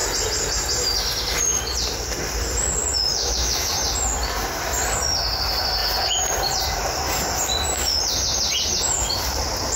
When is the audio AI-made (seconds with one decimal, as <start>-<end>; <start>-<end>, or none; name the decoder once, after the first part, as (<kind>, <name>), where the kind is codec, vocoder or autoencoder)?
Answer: 3.1-3.7 (autoencoder, DAC-VAE)